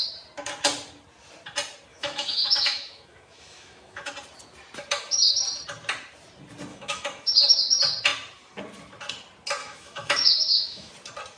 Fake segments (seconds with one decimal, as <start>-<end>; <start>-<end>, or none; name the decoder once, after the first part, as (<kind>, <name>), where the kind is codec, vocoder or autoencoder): 1.9-4.1 (autoencoder, DAC-VAE); 6.7-7.6; 9.6-10.9